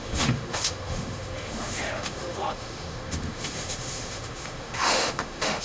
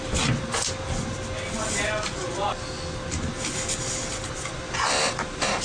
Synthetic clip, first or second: first